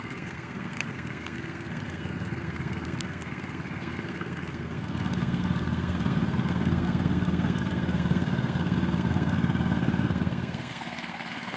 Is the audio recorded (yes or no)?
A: no